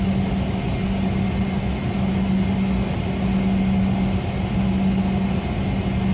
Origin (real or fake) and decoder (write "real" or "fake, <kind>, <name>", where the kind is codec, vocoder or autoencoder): real